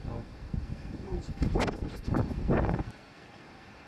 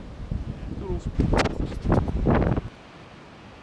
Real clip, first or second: second